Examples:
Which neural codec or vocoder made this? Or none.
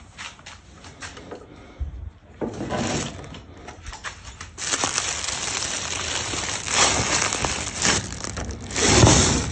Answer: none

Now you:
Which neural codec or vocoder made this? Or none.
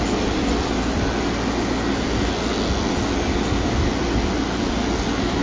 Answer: none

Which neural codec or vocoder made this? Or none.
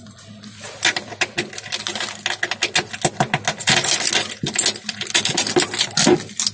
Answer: none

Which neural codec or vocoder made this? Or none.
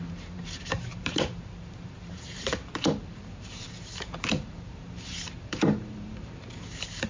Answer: vocoder, BigVGAN v2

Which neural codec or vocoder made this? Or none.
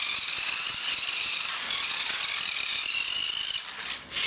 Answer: vocoder, BigVGAN v2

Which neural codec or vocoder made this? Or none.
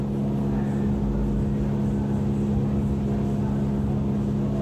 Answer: none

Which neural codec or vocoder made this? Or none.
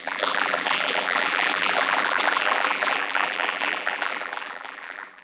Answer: vocoder, BigVGAN v2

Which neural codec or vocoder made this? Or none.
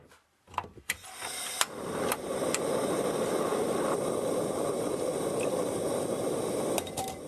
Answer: none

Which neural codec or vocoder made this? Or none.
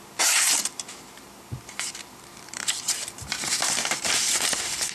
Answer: vocoder, BigVGAN v2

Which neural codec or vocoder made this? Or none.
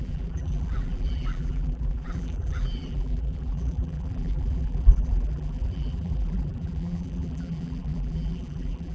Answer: vocoder, BigVGAN v2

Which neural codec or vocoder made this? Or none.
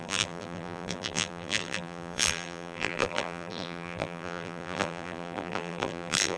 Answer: vocoder, BigVGAN v2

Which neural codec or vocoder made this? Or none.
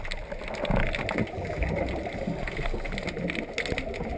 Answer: none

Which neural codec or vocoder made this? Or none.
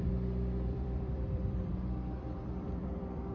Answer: vocoder, BigVGAN v2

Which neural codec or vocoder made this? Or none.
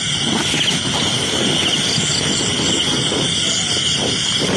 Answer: none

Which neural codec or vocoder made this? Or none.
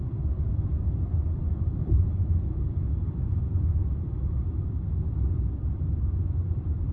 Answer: vocoder, BigVGAN v2